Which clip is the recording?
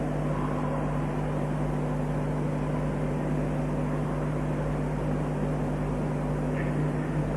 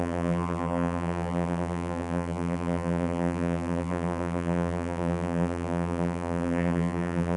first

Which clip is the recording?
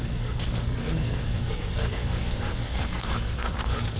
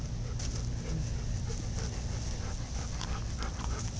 second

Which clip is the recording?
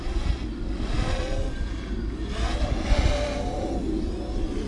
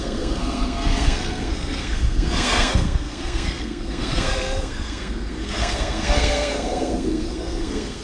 first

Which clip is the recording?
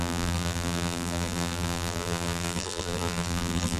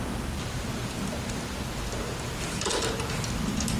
second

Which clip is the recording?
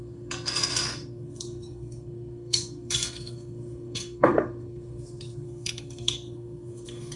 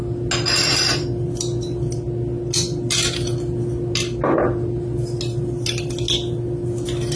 second